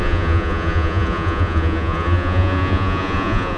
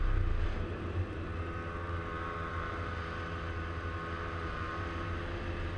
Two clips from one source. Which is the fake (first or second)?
first